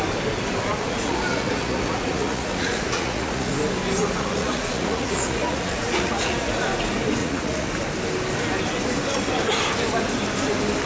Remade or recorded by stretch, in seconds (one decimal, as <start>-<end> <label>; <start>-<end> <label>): 0.0-0.7 recorded; 0.7-3.5 remade; 3.5-4.0 recorded; 4.0-6.5 remade; 6.5-7.2 recorded; 7.2-7.7 remade; 7.7-10.9 recorded